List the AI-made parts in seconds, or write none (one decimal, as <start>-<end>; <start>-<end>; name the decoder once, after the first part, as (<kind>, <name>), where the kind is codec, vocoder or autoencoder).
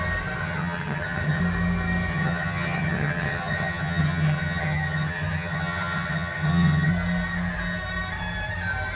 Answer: 0.4-1.4 (vocoder, HiFi-GAN); 2.1-6.9